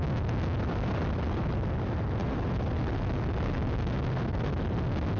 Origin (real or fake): real